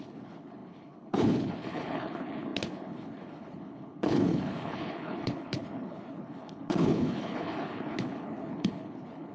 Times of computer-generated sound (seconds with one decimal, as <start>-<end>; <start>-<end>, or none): 0.0-9.3

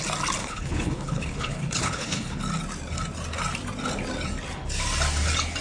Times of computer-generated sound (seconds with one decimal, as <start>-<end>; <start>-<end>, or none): 0.4-2.4

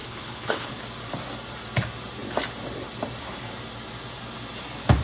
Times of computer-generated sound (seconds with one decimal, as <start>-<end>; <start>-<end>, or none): 0.0-0.7

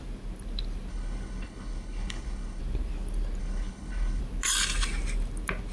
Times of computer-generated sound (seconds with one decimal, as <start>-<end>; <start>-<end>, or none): 0.9-2.6; 3.4-4.2